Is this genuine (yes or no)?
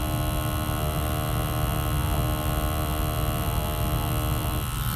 yes